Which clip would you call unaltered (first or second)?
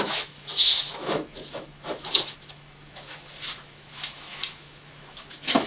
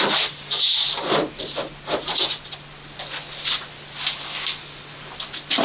second